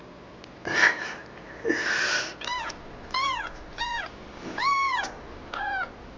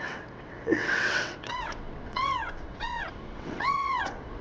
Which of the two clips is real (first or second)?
first